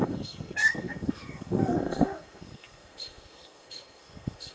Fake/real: fake